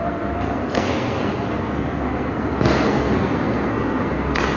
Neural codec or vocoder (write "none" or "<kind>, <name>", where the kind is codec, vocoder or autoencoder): codec, SNAC